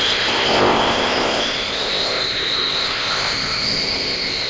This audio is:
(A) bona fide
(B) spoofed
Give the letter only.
B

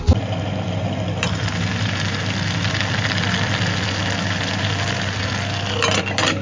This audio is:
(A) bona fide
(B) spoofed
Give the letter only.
A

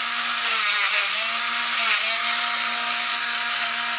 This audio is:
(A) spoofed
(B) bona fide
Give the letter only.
B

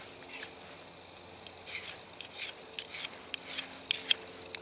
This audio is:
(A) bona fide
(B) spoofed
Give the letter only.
A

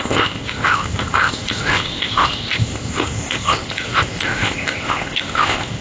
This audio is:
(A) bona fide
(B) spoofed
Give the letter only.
B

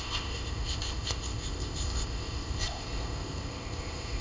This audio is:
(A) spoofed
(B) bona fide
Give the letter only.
A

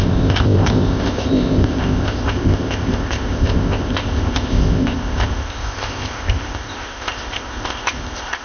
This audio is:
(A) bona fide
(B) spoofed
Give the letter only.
B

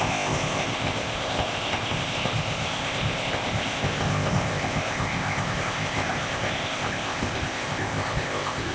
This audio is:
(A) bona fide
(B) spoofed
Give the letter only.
B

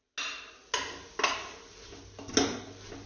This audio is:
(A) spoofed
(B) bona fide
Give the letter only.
B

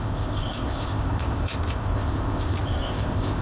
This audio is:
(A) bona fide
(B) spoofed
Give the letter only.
B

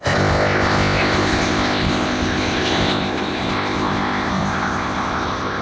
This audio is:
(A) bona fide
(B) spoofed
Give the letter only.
B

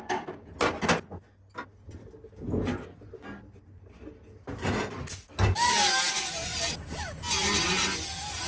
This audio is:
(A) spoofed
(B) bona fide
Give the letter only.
B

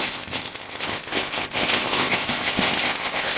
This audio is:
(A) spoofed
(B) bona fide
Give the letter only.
A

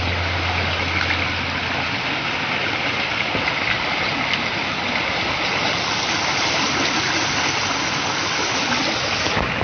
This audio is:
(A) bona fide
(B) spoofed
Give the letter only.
A